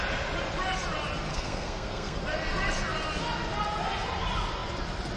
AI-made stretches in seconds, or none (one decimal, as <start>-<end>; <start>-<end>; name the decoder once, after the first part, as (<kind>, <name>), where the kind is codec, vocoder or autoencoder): 1.3-2.2 (codec, SNAC)